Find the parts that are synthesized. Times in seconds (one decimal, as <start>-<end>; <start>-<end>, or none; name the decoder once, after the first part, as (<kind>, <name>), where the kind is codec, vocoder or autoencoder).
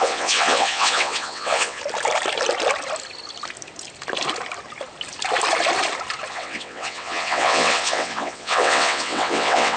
0.0-1.8 (vocoder, WaveNeXt); 6.3-9.8